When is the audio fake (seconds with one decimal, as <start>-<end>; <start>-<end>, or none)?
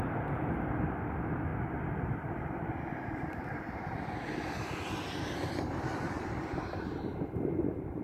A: none